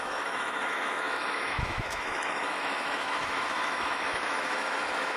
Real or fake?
fake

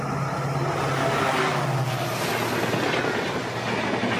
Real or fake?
real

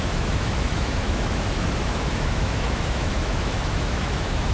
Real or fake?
fake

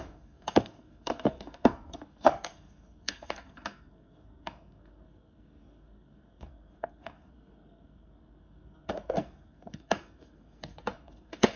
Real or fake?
fake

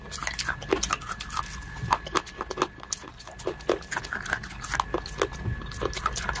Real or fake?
real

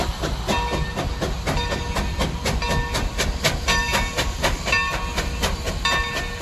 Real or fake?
real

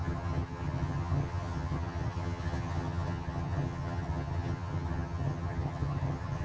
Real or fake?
fake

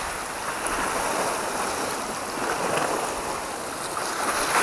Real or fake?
real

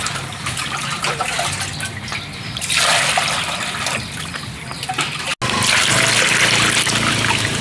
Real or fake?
real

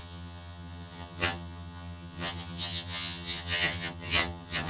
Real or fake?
fake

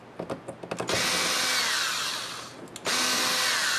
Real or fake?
real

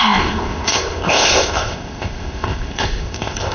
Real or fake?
fake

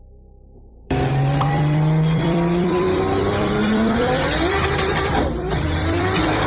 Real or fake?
fake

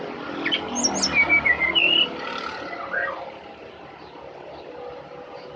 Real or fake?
real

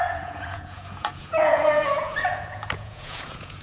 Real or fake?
fake